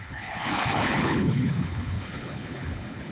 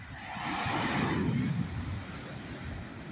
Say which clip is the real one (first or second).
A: second